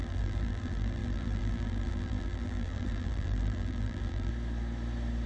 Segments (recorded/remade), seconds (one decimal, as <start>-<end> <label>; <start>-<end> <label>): 0.0-4.3 remade; 4.3-5.3 recorded